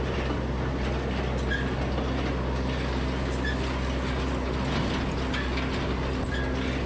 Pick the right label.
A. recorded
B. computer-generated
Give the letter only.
A